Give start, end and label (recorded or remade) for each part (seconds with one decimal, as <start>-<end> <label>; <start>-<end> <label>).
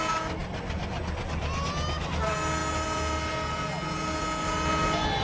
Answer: 0.0-5.2 recorded